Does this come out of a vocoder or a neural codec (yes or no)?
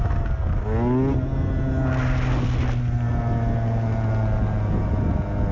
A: no